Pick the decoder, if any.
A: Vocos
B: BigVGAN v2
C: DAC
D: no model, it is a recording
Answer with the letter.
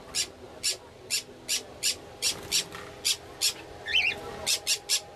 D